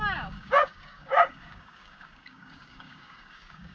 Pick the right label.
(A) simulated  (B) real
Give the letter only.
A